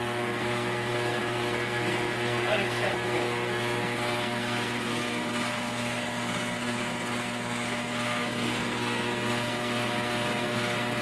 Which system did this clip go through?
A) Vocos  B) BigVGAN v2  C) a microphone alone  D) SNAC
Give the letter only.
D